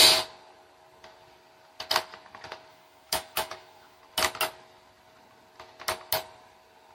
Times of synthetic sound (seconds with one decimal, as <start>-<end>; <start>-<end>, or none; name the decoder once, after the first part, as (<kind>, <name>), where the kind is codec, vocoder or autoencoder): 2.7-4.0 (autoencoder, DAC-VAE)